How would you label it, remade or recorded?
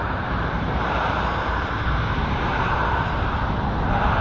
remade